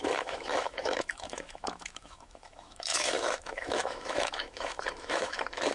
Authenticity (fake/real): fake